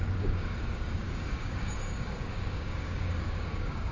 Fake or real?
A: fake